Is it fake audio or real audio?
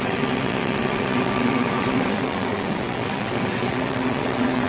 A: fake